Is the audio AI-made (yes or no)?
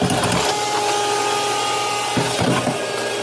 no